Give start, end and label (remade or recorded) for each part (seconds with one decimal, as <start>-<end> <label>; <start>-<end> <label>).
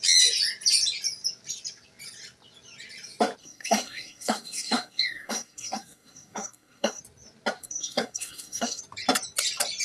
0.0-3.4 recorded; 3.4-7.0 remade; 7.0-7.6 recorded; 7.6-8.8 remade; 8.8-9.8 recorded